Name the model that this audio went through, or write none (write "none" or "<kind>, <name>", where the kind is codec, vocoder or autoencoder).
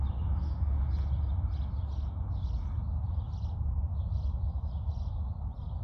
none